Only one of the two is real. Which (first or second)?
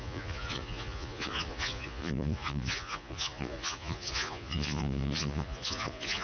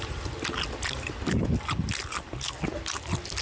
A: second